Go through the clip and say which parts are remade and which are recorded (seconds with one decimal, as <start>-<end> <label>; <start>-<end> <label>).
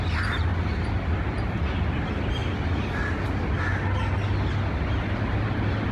0.0-0.5 remade; 0.5-1.7 recorded; 1.7-2.4 remade; 2.4-5.2 recorded; 5.2-5.9 remade